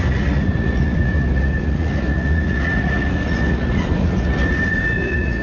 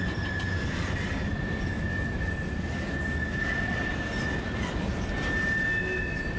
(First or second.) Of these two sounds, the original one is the second